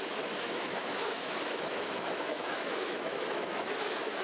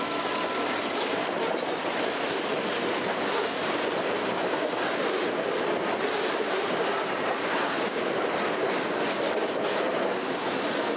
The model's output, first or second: first